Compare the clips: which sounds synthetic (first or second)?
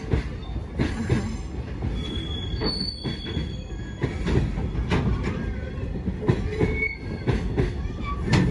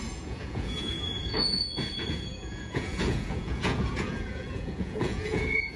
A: second